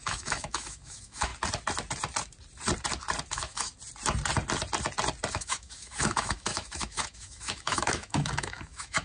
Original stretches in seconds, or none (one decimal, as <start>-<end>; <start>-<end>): 1.3-3.3; 3.7-5.3

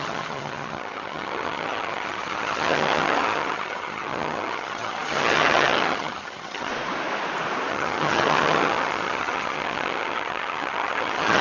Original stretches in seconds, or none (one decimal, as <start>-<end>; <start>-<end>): 6.7-7.7

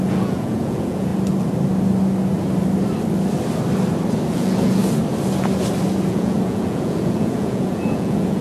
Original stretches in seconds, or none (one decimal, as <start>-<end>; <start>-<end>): 1.1-4.3; 4.8-6.1

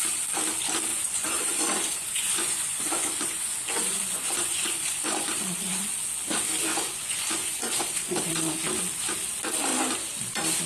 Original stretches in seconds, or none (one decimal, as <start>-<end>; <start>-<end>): 0.0-0.9; 5.9-6.7; 8.3-10.7

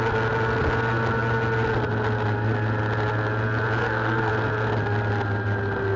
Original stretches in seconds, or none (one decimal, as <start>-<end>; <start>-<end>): 0.0-3.8; 4.3-6.0

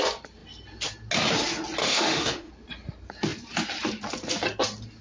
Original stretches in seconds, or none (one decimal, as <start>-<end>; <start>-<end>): 0.0-1.8; 2.5-5.0

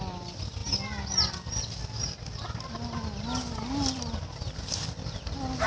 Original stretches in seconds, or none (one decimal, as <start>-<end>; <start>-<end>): 0.0-5.7